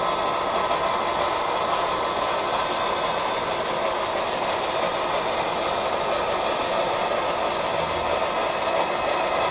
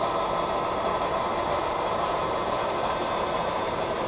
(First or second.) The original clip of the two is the first